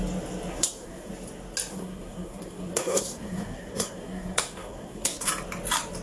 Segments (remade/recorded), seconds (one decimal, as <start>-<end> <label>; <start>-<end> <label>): 0.0-0.5 recorded; 0.5-1.1 remade; 1.1-1.7 recorded; 1.7-5.3 remade; 5.3-6.0 recorded